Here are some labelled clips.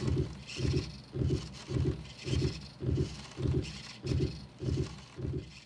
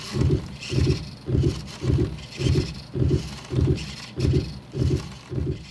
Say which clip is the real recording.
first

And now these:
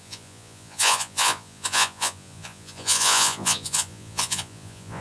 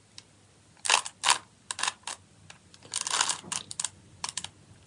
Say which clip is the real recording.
second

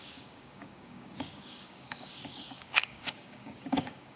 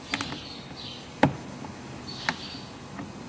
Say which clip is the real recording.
second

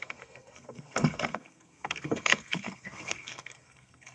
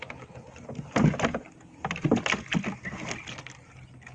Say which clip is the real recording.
second